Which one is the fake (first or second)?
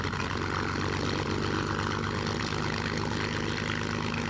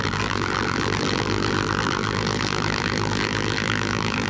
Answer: second